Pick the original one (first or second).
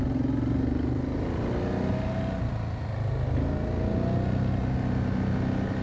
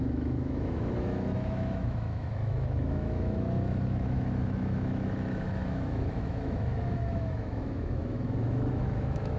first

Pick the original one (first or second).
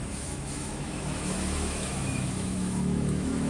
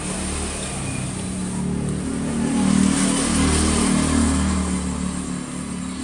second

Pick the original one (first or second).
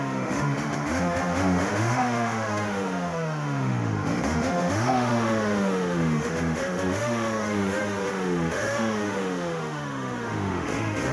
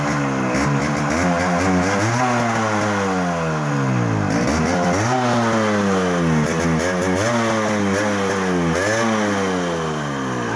second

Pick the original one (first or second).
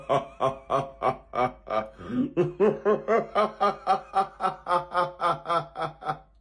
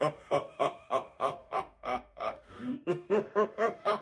first